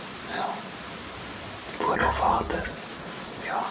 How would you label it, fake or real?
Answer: real